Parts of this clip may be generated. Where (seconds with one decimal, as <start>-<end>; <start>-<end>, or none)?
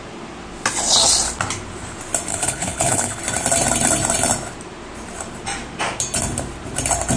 2.3-3.2